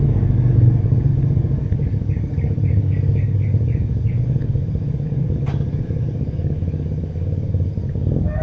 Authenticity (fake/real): fake